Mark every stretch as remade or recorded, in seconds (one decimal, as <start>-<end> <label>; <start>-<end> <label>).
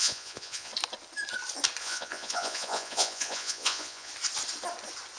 0.0-0.7 remade; 0.7-1.8 recorded; 1.8-4.1 remade; 4.1-5.2 recorded